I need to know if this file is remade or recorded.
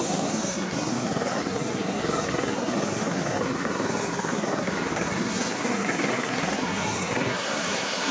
remade